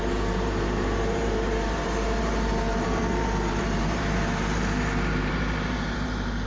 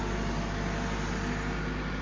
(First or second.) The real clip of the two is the second